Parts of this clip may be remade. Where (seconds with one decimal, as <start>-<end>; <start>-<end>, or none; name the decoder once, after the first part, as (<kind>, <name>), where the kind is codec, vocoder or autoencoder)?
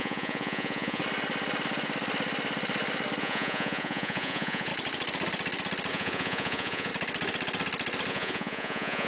0.0-1.0 (vocoder, Vocos); 3.2-4.7; 5.9-6.9; 8.1-9.1